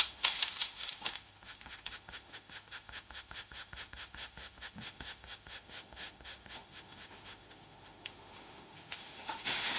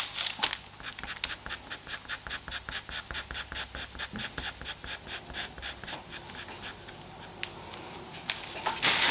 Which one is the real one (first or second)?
second